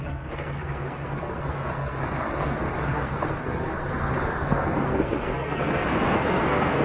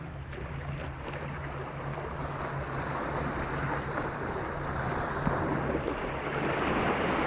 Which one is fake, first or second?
first